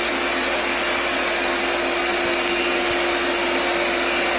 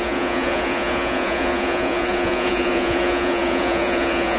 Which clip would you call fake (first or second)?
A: second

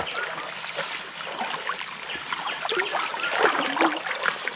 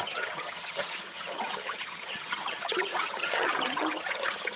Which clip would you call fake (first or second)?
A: second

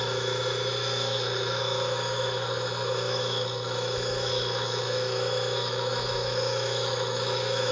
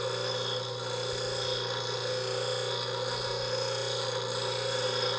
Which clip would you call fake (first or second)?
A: first